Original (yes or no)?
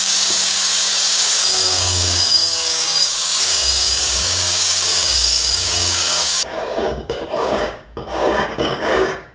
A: no